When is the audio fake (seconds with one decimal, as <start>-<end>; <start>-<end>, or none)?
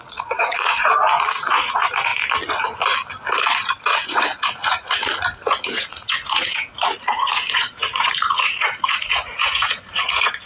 0.0-0.9; 1.5-2.1; 3.7-10.5